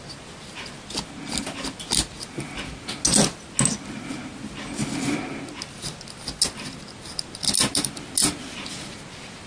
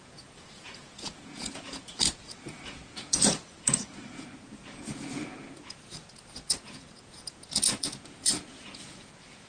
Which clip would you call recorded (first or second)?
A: first